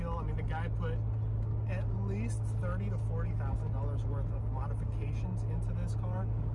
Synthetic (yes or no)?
no